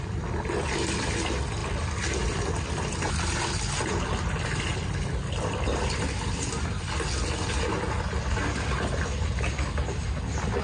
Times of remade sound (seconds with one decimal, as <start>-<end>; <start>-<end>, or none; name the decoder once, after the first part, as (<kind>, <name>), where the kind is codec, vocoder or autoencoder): none